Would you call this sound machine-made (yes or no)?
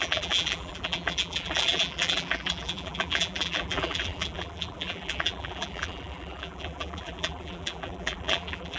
yes